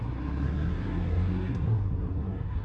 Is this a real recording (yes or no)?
no